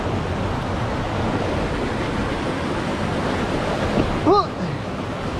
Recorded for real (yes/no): yes